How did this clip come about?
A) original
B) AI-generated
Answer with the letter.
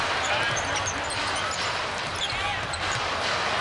A